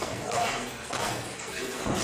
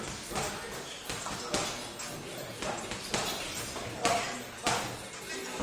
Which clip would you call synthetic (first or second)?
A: first